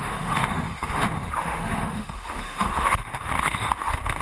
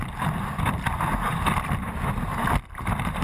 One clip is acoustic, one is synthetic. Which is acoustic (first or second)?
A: second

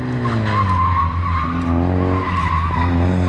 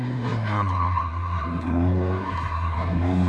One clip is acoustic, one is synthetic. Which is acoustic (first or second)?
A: first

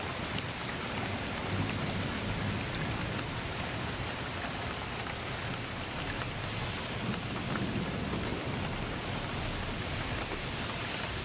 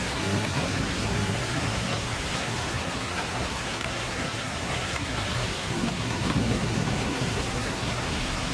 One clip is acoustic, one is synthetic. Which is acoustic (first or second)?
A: first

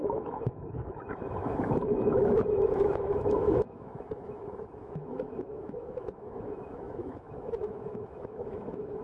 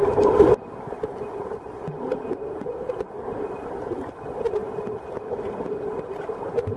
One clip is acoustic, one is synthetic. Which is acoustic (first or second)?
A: second